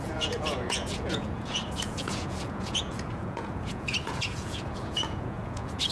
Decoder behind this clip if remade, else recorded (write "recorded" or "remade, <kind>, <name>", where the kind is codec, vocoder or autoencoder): remade, vocoder, Vocos